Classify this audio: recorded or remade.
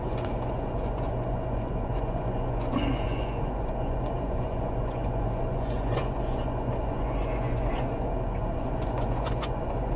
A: remade